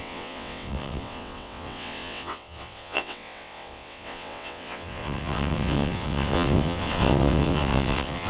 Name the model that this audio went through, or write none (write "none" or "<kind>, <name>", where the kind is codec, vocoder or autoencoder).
vocoder, WaveNeXt